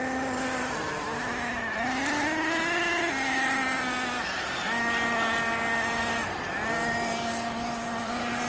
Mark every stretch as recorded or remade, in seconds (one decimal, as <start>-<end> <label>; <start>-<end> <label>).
0.0-8.5 recorded